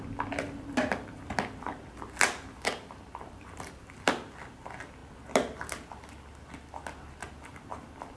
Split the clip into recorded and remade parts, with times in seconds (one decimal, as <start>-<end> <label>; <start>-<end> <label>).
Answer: 0.0-8.2 recorded